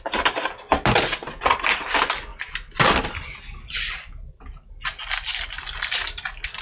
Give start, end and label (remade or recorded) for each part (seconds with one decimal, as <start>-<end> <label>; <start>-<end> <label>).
0.0-6.6 recorded